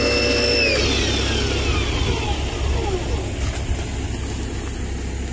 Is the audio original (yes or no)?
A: yes